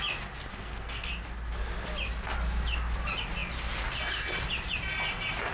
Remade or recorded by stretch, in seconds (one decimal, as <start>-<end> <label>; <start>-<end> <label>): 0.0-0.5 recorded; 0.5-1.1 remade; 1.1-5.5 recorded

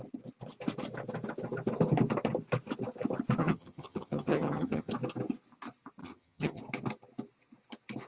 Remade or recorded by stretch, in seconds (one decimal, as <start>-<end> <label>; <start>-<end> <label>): 0.0-3.4 recorded; 3.4-4.9 remade; 4.9-6.0 recorded; 6.0-6.6 remade; 6.6-8.1 recorded

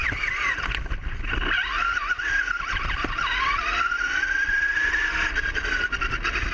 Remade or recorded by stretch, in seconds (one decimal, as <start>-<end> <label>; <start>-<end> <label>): 0.0-6.5 recorded

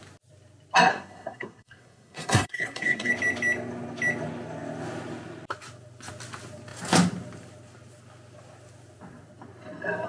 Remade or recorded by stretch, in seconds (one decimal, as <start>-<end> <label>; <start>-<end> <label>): 0.0-0.9 recorded; 0.9-3.1 remade; 3.1-10.1 recorded